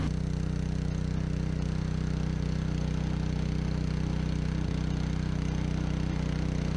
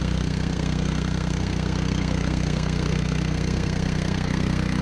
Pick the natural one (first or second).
first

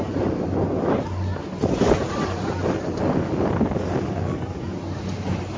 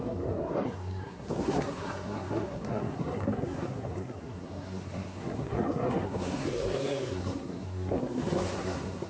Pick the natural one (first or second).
first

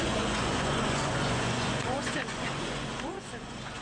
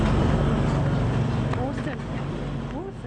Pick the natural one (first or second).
second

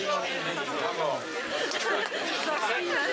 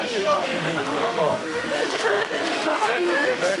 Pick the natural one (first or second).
first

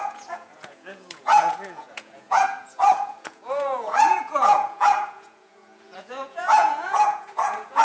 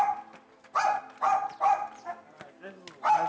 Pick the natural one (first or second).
second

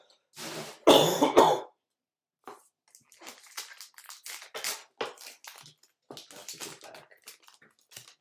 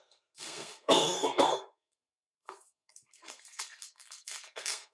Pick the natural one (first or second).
first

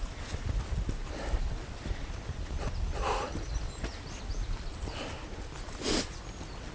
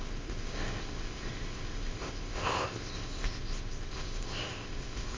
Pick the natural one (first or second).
first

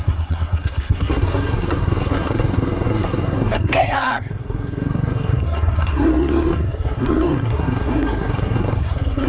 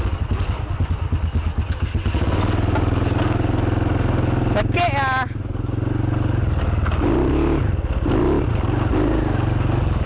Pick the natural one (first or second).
second